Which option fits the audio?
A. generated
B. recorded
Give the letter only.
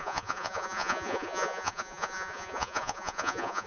A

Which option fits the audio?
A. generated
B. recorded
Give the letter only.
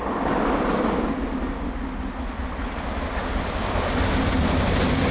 B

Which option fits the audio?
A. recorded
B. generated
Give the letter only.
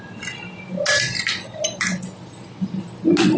A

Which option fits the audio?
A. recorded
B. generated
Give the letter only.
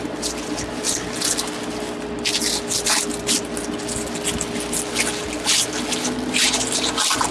A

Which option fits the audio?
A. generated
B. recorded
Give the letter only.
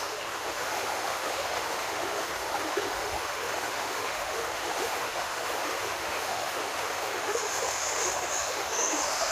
A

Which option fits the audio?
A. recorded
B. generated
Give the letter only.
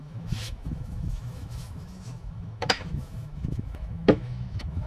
B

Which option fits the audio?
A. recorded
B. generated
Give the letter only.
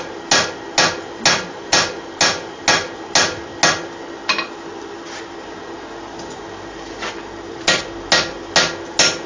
A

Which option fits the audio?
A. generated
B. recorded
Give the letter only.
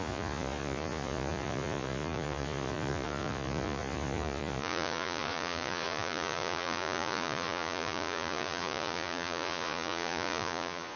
A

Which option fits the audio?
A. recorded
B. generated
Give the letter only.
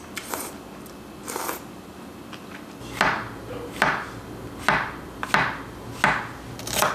A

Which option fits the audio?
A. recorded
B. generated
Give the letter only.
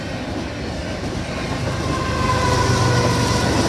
A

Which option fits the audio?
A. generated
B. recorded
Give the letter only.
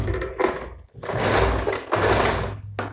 B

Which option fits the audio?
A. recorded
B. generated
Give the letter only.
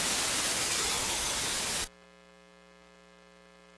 A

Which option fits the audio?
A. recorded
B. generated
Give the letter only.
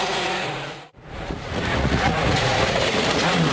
B